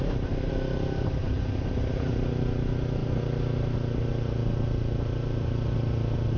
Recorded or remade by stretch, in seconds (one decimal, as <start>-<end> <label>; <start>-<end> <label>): 0.0-6.4 recorded